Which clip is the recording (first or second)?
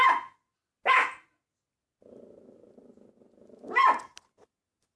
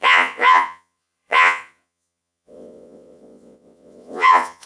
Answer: first